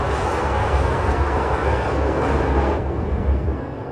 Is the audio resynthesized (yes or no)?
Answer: yes